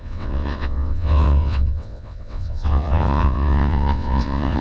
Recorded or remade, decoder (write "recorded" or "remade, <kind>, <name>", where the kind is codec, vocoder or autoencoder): remade, vocoder, WaveNeXt